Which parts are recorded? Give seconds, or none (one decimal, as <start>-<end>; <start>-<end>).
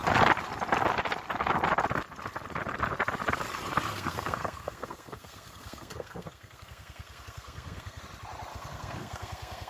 0.0-3.9; 8.0-8.5